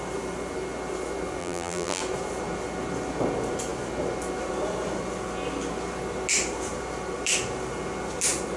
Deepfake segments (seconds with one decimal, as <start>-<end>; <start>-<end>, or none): 1.4-2.0